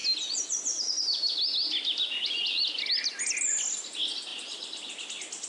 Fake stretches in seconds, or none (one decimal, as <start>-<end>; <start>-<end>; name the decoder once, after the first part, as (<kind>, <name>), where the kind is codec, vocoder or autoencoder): none